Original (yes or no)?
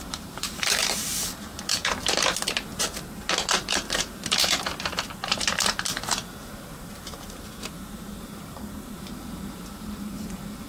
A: no